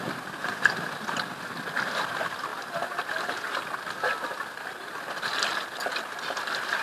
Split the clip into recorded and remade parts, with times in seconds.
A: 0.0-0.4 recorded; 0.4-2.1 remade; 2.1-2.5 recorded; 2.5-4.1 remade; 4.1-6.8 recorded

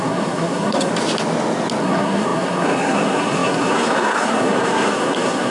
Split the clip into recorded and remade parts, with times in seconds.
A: 0.0-0.9 remade; 0.9-1.8 recorded; 1.8-5.5 remade

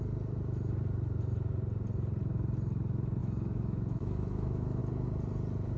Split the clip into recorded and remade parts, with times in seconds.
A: 0.0-3.2 recorded; 3.2-4.8 remade; 4.8-5.8 recorded

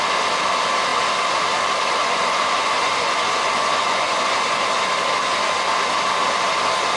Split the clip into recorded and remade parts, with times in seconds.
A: 0.0-2.0 recorded; 2.0-4.6 remade; 4.6-7.0 recorded

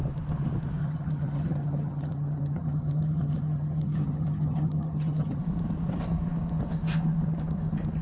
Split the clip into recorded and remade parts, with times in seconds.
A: 0.0-0.8 recorded; 0.8-5.4 remade; 5.4-8.0 recorded